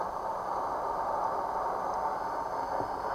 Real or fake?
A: real